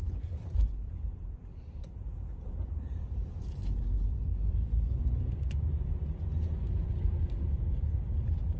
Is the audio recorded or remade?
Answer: remade